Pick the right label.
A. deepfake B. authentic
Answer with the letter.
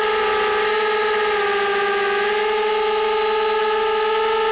B